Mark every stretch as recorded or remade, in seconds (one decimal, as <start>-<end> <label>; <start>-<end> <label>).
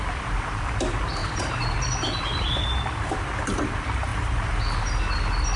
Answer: 0.0-1.2 recorded; 1.2-1.9 remade; 1.9-5.6 recorded